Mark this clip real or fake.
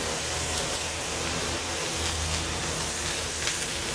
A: real